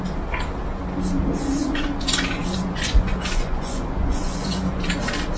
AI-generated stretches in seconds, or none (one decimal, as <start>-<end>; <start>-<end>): 1.6-4.8